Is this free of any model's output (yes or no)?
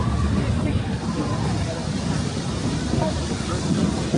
yes